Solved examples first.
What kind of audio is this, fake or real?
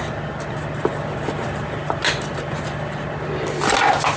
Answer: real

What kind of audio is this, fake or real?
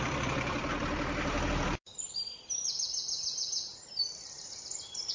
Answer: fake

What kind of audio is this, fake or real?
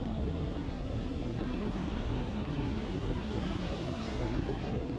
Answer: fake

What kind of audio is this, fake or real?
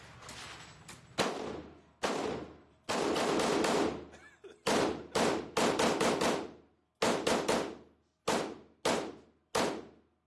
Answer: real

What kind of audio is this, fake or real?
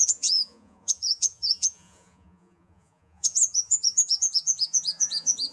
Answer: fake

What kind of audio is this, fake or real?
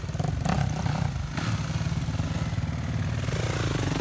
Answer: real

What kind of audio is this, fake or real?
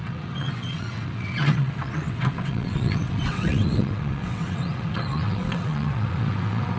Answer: fake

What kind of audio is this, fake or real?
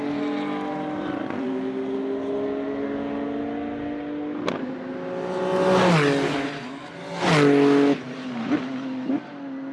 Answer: real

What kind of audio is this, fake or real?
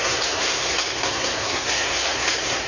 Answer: fake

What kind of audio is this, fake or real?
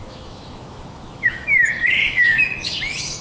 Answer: fake